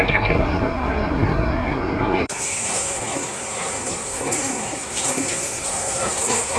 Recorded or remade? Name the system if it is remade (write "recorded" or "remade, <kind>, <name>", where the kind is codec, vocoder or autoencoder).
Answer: remade, codec, SNAC